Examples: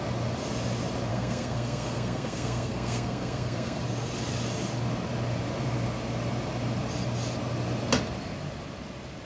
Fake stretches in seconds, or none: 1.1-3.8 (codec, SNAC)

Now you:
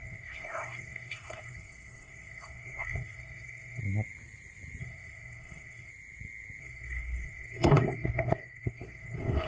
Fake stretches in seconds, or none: 0.0-3.8 (codec, SNAC); 4.8-5.9; 6.6-9.5

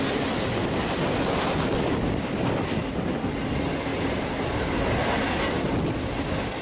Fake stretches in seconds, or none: none

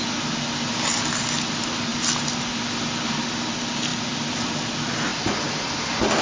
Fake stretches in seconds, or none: none